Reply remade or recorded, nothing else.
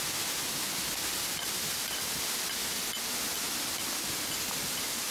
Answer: recorded